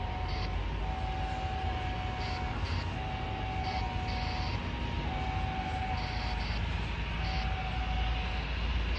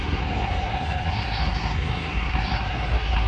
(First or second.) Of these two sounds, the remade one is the second